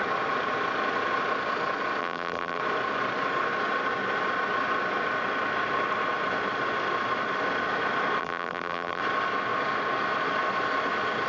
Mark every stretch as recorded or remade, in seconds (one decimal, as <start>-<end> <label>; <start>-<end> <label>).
0.0-2.0 recorded; 2.0-2.6 remade; 2.6-8.2 recorded; 8.2-9.0 remade; 9.0-11.3 recorded